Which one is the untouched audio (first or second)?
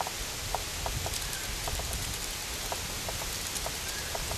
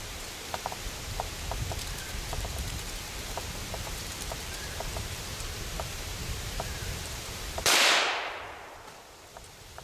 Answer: first